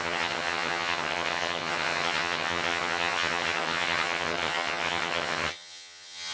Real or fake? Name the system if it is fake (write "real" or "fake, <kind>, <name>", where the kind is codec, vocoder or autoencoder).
fake, vocoder, HiFi-GAN